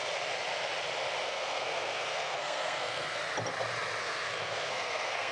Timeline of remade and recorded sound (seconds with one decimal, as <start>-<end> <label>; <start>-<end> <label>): 0.0-1.2 recorded; 1.2-3.2 remade; 3.2-4.0 recorded; 4.0-5.3 remade